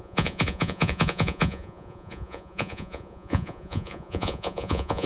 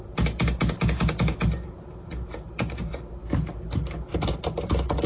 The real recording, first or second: second